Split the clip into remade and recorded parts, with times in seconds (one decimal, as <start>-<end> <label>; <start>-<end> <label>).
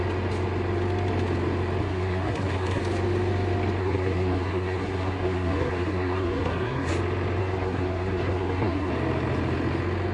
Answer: 0.0-1.8 recorded; 1.8-2.8 remade; 2.8-3.8 recorded; 3.8-6.9 remade; 6.9-7.4 recorded; 7.4-8.9 remade; 8.9-10.1 recorded